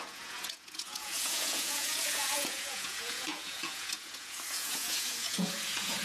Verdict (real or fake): fake